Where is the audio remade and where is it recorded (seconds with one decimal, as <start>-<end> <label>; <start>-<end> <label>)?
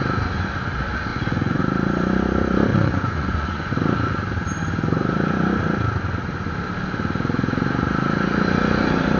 0.0-1.1 recorded; 1.1-1.6 remade; 1.6-2.7 recorded; 2.7-3.7 remade; 3.7-9.2 recorded